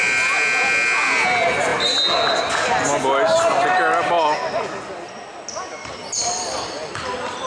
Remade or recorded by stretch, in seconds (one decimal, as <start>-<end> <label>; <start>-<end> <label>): 0.0-7.5 recorded